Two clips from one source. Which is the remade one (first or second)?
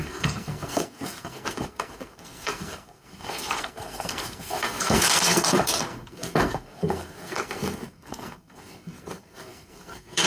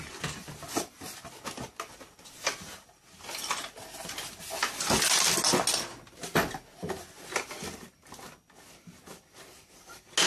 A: first